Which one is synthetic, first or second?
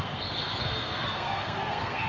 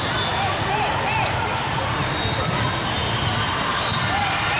first